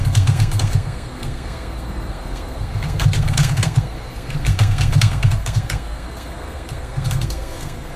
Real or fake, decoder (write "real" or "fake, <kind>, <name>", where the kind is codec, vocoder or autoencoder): fake, codec, SNAC